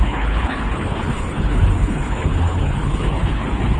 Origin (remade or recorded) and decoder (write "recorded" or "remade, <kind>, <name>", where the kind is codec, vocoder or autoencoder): remade, codec, HILCodec